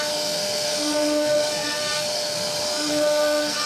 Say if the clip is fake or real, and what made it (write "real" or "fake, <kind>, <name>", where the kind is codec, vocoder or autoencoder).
fake, codec, SNAC